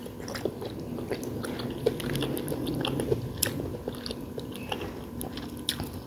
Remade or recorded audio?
recorded